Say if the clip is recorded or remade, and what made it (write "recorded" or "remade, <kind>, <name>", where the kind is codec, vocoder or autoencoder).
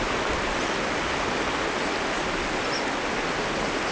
recorded